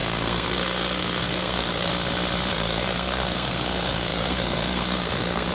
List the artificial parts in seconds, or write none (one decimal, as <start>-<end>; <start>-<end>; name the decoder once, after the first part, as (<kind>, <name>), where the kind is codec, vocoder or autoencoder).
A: 0.0-1.9 (codec, SNAC); 2.5-5.5